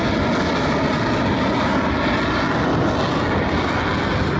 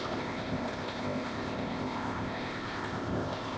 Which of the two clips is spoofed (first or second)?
second